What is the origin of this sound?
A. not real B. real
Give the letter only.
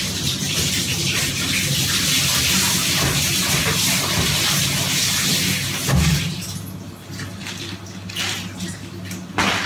B